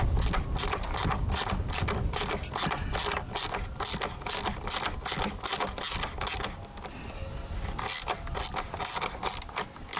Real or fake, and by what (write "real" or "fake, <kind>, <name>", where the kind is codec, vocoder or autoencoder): real